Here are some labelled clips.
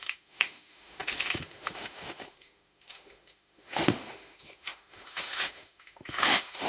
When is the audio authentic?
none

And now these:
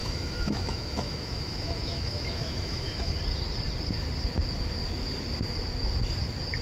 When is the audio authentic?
3.1-6.6